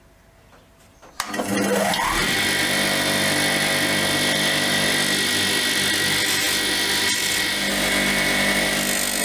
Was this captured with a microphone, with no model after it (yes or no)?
yes